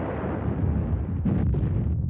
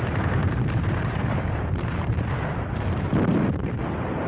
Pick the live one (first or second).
first